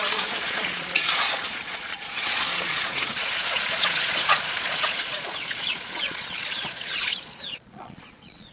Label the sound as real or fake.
fake